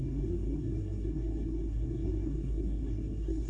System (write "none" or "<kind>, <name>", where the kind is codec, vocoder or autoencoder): codec, SNAC